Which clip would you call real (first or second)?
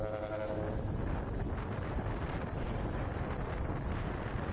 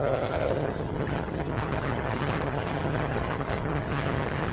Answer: first